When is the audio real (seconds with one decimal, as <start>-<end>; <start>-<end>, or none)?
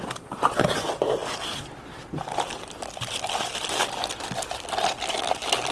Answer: 0.0-5.7